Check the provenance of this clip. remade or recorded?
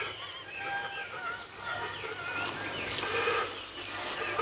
recorded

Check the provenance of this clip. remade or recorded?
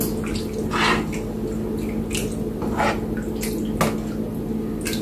recorded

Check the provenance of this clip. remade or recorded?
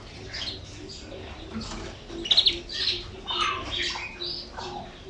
recorded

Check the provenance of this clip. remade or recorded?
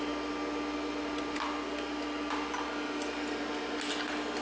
recorded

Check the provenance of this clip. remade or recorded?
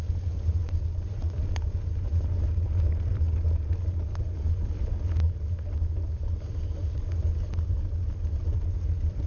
recorded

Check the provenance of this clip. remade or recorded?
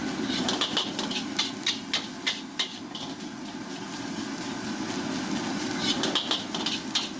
recorded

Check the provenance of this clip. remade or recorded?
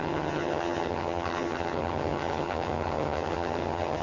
remade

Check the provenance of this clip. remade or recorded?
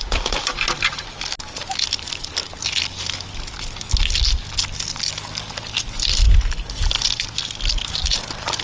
recorded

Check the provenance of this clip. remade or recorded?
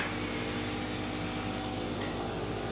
recorded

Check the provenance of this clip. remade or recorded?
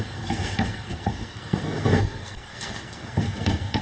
remade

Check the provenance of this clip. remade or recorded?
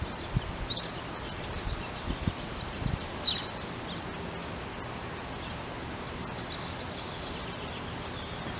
recorded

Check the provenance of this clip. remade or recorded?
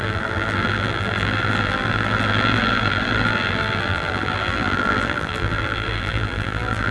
remade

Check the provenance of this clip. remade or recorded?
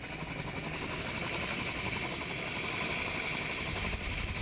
recorded